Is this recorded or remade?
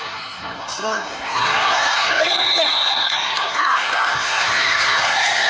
remade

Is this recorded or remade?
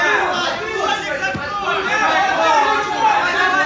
recorded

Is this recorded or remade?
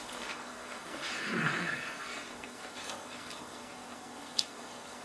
remade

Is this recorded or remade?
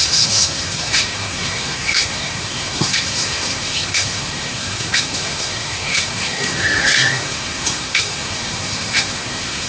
remade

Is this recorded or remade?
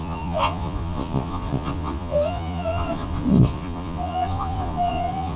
remade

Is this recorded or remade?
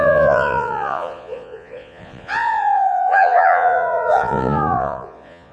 remade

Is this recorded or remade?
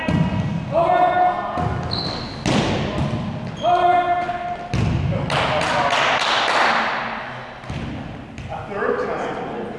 recorded